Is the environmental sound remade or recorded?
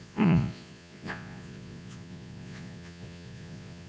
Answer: remade